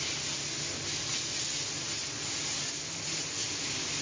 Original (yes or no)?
yes